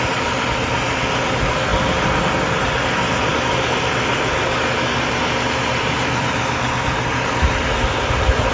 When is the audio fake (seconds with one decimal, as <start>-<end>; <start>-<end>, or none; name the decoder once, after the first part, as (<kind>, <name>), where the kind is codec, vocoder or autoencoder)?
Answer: none

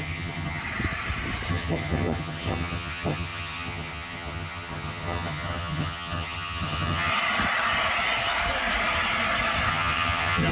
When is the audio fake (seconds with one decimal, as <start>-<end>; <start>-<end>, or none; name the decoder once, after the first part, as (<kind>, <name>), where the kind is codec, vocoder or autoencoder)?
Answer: 0.0-0.6 (vocoder, HiFi-GAN); 1.5-7.1; 9.7-10.5

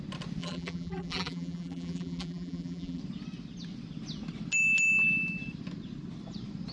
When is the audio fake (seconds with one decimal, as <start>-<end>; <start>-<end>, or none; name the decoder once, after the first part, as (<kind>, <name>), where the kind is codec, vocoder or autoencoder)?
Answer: 0.4-3.0 (vocoder, BigVGAN v2)

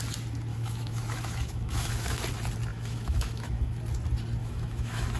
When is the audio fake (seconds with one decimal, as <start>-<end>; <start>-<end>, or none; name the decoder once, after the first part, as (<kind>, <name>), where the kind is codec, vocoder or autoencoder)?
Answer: 0.5-2.2 (autoencoder, DAC-VAE); 2.7-3.8; 4.4-5.2

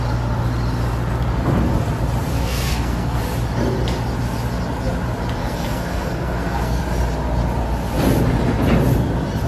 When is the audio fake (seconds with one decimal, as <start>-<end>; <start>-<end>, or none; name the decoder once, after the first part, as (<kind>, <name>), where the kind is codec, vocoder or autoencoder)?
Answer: 2.3-3.2 (codec, SNAC); 5.4-6.8

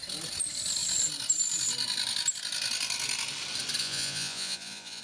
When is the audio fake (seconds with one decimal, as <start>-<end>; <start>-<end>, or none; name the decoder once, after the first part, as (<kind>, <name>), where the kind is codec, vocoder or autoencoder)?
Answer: 3.8-5.0 (vocoder, Vocos)

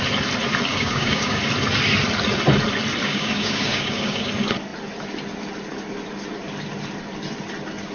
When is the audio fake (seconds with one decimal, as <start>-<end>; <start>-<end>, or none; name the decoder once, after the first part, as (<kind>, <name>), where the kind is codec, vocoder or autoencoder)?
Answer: 0.7-1.4 (codec, DAC); 3.0-4.3

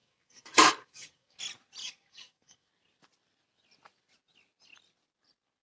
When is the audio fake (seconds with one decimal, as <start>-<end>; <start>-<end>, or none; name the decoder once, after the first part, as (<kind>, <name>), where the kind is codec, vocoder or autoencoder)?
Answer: 0.0-1.4 (codec, DAC); 1.8-2.7